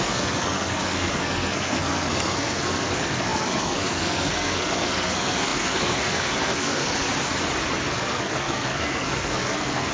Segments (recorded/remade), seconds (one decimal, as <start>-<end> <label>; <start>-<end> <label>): 0.0-7.1 remade; 7.1-7.9 recorded; 7.9-9.9 remade